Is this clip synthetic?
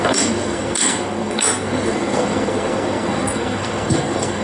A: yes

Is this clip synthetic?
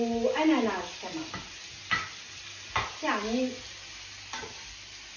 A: no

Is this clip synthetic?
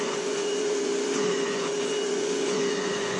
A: yes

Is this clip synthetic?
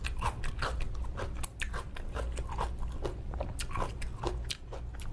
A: no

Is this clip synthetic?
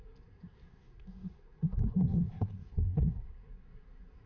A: yes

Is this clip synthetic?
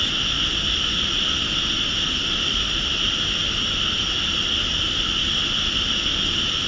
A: no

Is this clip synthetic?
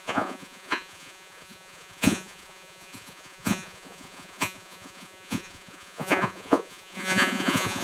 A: yes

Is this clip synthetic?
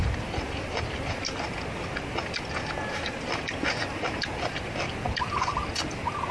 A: no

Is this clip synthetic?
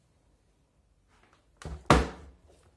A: no